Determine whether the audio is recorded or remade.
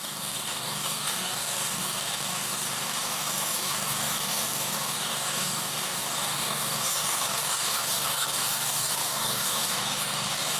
remade